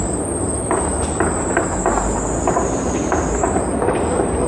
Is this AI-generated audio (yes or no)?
no